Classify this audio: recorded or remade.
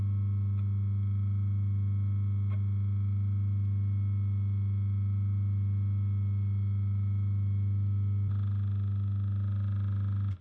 recorded